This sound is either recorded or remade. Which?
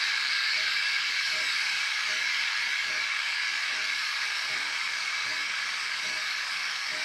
remade